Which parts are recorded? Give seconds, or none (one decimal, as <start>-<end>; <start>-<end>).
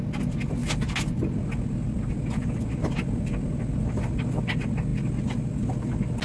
0.0-6.2